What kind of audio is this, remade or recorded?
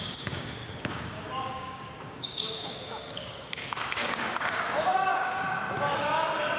remade